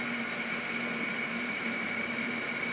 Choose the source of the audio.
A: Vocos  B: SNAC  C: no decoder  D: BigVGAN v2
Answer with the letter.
D